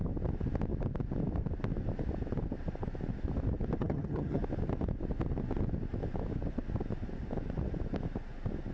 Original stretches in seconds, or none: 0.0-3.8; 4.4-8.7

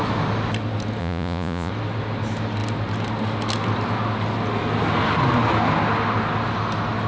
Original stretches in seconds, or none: 0.0-1.0; 1.7-7.1

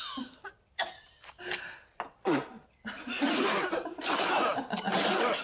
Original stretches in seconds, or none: 0.0-4.5; 5.0-5.4

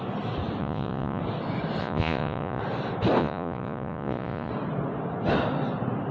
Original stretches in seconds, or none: 0.0-0.6; 1.2-1.8; 2.6-3.2; 4.5-6.1

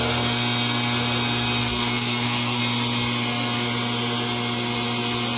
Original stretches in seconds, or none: 0.0-1.6; 2.6-5.4

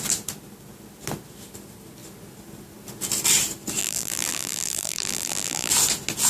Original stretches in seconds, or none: 0.0-3.8; 5.7-6.3

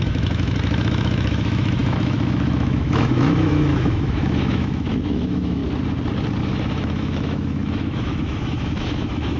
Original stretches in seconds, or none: 5.6-6.4